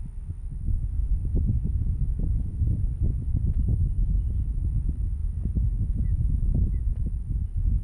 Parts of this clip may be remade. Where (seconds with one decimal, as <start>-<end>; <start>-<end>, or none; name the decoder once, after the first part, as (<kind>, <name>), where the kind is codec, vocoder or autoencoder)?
1.2-3.6 (vocoder, BigVGAN v2)